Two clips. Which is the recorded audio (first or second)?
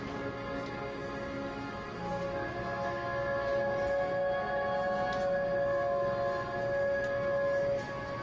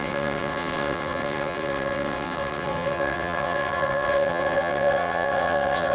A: first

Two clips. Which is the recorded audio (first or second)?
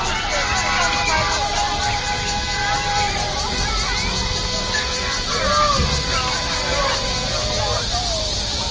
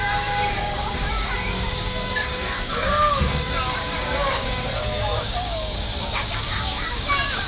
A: first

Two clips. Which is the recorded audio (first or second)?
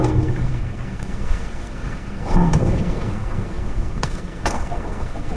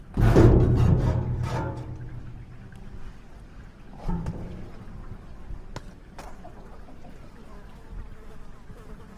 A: second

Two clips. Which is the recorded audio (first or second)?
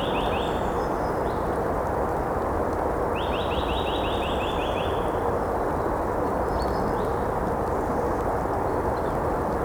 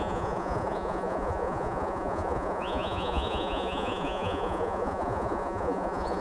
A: first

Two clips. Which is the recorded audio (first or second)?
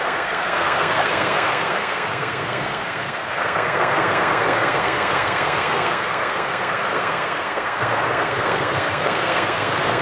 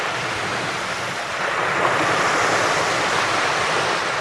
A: second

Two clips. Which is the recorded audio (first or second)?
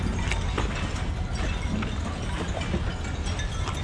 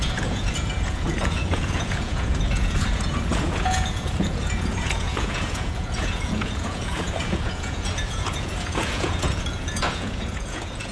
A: first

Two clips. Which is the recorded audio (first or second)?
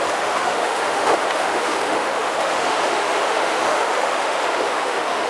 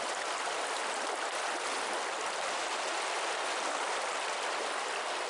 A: second